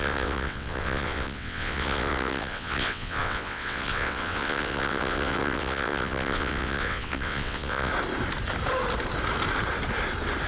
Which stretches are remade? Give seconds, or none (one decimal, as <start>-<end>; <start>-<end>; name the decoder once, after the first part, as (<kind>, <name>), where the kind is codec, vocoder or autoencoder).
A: 0.0-7.9 (vocoder, WaveNeXt)